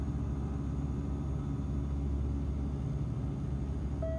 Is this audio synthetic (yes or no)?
no